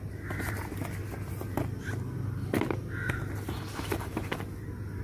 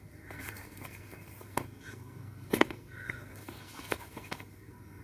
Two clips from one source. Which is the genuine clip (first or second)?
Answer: first